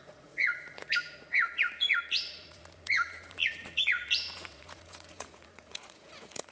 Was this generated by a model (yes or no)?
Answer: yes